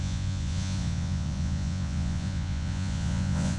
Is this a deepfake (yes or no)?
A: yes